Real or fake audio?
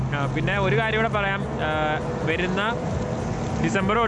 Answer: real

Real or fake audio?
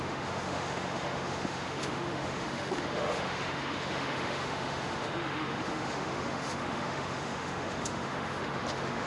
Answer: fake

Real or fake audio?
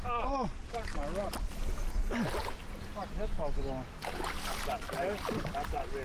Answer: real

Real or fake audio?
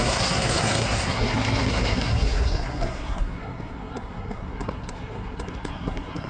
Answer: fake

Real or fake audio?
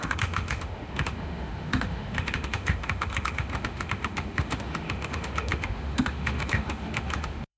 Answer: fake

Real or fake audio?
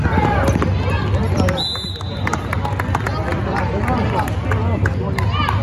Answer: real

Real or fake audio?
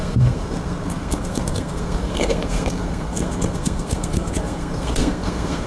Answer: fake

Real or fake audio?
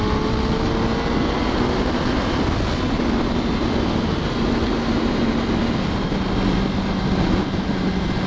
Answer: real